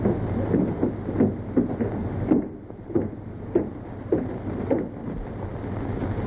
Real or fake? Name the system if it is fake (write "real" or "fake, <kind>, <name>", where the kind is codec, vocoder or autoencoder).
fake, vocoder, BigVGAN v2